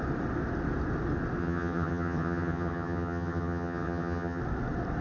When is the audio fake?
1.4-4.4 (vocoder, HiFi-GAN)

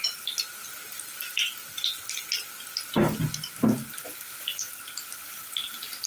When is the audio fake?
none

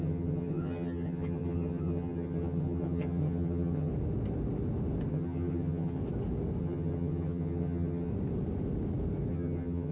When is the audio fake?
0.0-3.9 (vocoder, HiFi-GAN); 5.1-6.0; 6.6-8.1; 9.3-9.9

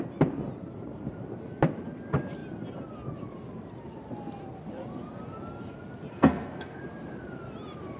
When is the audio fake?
6.1-6.8 (codec, SNAC)